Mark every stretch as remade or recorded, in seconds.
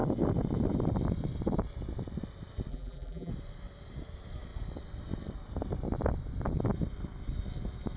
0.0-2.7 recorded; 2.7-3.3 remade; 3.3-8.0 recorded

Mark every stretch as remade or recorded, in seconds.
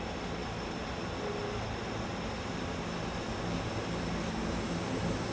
0.0-5.3 recorded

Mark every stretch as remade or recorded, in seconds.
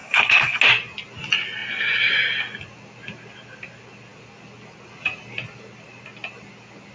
0.0-0.6 remade; 0.6-6.9 recorded